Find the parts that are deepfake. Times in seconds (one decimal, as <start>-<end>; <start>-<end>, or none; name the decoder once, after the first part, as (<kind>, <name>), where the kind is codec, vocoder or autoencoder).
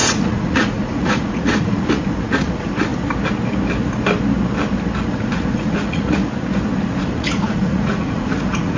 0.0-2.9 (vocoder, Vocos); 5.1-6.2; 7.0-8.8